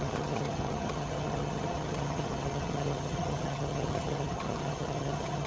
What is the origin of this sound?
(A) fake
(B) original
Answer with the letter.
A